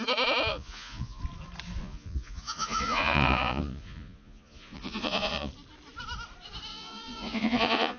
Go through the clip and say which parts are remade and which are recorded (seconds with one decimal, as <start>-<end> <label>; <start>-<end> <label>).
0.0-0.5 recorded; 0.5-1.2 remade; 1.2-1.8 recorded; 1.8-5.5 remade; 5.5-6.7 recorded; 6.7-8.0 remade